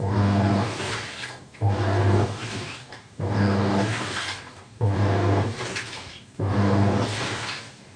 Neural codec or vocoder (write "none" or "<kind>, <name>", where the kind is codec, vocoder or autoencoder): codec, DAC